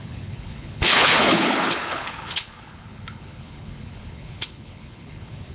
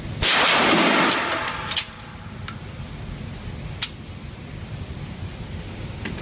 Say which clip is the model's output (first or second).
first